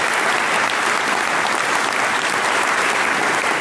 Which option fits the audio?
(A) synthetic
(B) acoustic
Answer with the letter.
B